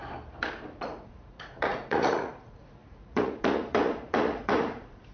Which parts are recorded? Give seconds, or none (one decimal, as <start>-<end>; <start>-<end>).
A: 0.0-0.8